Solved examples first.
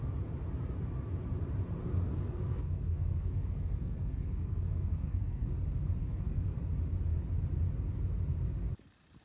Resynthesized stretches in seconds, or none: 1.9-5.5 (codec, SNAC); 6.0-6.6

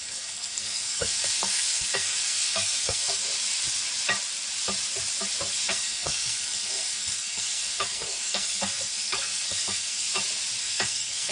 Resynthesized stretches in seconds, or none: 0.0-3.2 (codec, SNAC); 5.5-10.1; 10.6-11.3

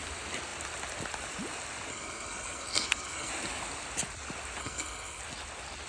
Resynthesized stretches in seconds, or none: 1.9-3.3 (codec, SNAC); 4.6-5.2

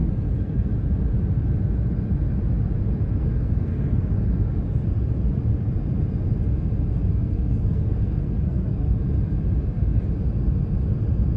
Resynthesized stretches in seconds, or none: 0.0-0.7 (codec, SNAC); 3.2-4.1; 7.1-9.0

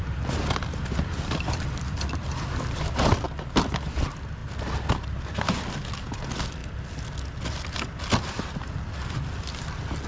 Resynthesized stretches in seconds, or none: none

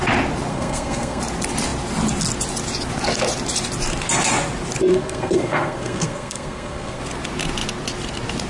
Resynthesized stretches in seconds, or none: 0.5-1.2 (codec, SNAC); 4.9-7.0

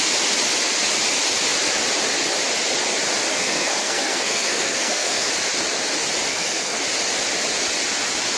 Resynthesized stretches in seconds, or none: 3.3-5.3 (codec, SNAC); 6.3-6.8